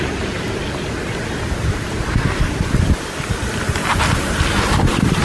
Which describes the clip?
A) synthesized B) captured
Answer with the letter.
B